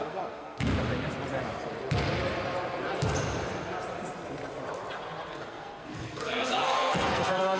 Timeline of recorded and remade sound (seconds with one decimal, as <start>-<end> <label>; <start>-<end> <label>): 0.0-0.7 remade; 0.7-5.3 recorded; 5.3-7.6 remade